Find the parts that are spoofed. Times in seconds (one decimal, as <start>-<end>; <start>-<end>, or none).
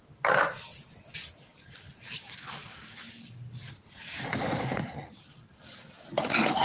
3.6-4.9